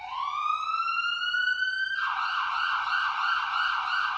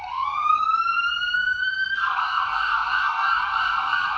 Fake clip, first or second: second